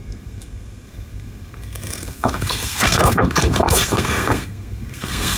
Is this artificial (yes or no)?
yes